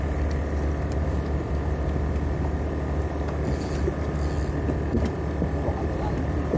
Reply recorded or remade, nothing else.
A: recorded